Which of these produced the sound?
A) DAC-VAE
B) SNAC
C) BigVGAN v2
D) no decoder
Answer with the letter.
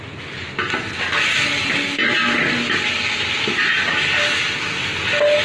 D